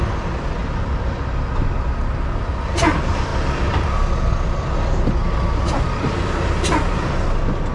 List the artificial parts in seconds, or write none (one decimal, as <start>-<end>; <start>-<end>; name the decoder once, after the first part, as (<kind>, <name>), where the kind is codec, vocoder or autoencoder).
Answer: none